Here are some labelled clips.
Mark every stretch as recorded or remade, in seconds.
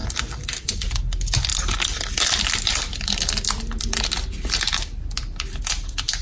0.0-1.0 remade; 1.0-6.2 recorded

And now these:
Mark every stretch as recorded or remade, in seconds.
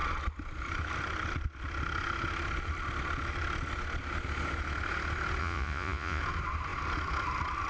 0.0-5.4 recorded; 5.4-6.2 remade; 6.2-7.7 recorded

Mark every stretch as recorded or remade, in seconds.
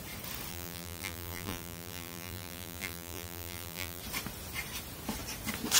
0.0-0.5 recorded; 0.5-4.0 remade; 4.0-5.8 recorded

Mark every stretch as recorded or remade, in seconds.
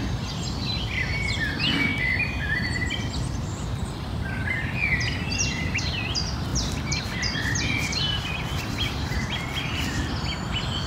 0.0-1.9 remade; 1.9-4.9 recorded; 4.9-10.9 remade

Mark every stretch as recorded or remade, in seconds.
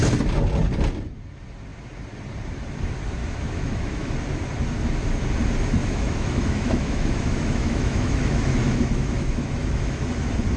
0.0-3.2 recorded; 3.2-4.1 remade; 4.1-5.8 recorded; 5.8-10.0 remade; 10.0-10.6 recorded